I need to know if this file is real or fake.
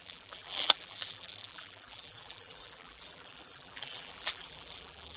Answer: fake